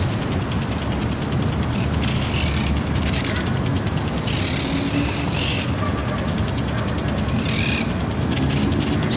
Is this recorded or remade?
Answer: recorded